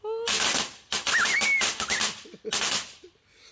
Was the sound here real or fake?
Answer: real